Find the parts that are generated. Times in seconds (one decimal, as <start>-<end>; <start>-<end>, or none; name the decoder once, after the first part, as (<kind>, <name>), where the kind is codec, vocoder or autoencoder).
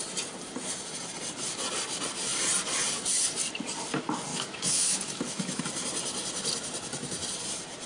4.3-5.6 (autoencoder, DAC-VAE)